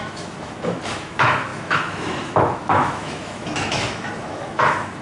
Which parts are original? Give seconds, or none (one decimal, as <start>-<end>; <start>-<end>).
none